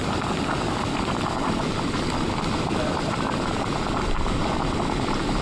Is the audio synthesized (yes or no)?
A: no